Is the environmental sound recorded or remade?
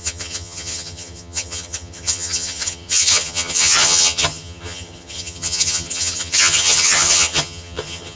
remade